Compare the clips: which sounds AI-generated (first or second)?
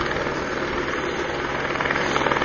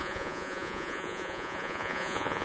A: second